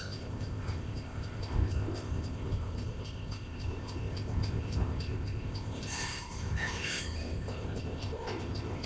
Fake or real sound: fake